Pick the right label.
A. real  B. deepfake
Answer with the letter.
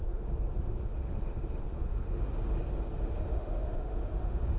B